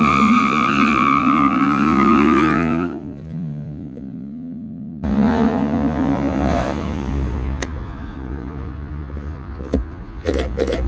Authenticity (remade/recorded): remade